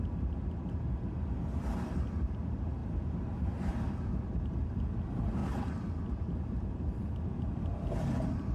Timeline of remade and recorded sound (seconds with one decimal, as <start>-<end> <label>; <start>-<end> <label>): 0.0-2.8 recorded; 2.8-4.3 remade; 4.3-8.5 recorded